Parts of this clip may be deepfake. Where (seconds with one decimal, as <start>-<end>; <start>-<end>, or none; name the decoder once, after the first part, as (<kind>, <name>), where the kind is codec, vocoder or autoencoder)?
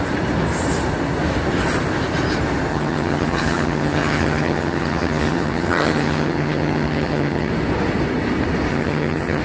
2.7-7.5 (vocoder, HiFi-GAN); 8.7-9.4